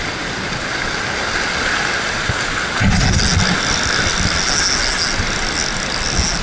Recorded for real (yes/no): yes